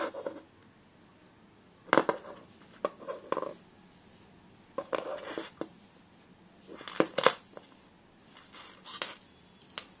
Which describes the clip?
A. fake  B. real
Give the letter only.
B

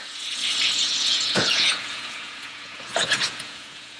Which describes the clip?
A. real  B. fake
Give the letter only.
B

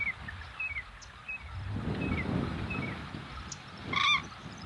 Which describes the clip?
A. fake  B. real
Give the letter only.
B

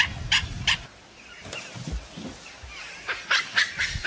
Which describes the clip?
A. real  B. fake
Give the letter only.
A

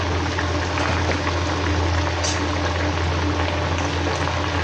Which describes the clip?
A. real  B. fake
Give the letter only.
A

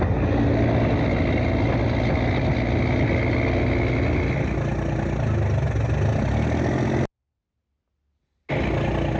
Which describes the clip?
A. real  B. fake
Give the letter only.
A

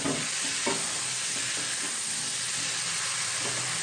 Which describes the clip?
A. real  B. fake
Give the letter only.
A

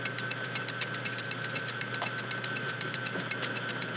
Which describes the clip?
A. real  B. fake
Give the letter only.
A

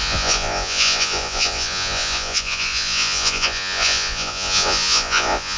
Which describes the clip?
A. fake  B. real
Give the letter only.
A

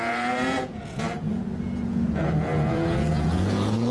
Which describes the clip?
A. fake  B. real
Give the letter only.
A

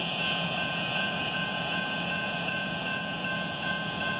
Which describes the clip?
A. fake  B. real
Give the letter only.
A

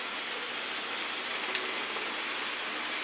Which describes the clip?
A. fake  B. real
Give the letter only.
B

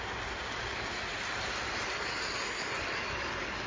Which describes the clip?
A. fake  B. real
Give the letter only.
B